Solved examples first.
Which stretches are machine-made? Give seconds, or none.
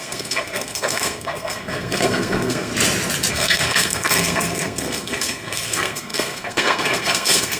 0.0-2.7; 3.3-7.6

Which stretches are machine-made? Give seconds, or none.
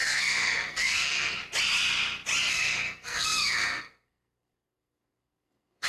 0.0-1.4; 2.5-5.9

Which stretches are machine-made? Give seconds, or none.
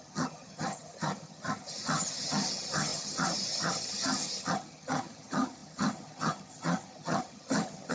0.0-7.9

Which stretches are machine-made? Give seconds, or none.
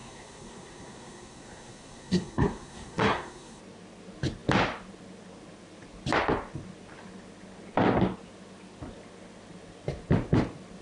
0.0-3.6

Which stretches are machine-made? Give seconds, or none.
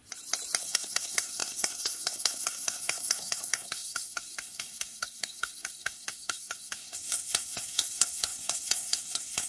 0.6-9.5